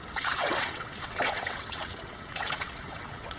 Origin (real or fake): fake